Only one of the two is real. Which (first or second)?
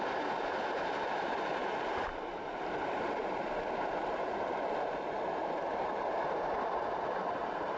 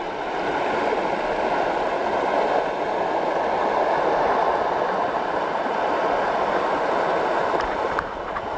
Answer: second